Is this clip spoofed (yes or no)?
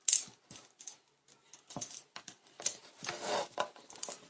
no